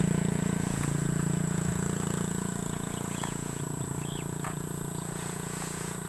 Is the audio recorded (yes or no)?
no